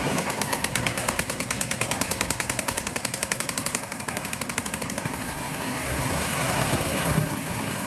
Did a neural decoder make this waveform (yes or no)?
yes